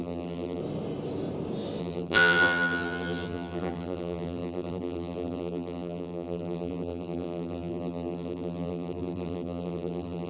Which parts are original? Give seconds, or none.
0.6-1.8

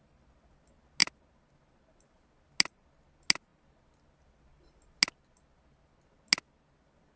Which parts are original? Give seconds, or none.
0.0-7.2

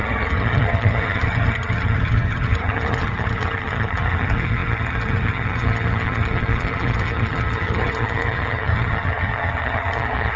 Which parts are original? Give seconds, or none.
none

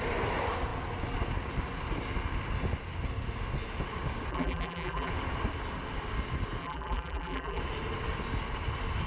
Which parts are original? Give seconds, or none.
0.0-4.3; 5.1-6.6; 7.6-9.1

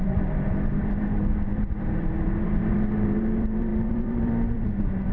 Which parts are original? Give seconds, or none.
none